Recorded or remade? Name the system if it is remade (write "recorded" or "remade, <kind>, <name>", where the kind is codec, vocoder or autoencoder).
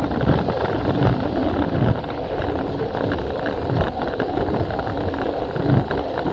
recorded